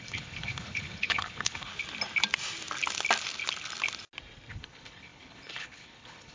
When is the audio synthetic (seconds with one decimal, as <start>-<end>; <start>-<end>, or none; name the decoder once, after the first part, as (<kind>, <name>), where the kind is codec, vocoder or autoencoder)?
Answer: 0.0-1.7 (codec, HILCodec); 4.5-6.3